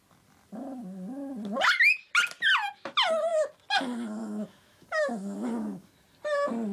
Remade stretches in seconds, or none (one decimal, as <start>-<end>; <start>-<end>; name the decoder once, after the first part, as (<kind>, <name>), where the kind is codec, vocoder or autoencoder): 4.2-5.9 (autoencoder, DAC-VAE)